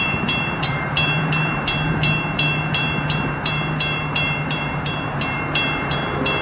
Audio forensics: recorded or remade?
remade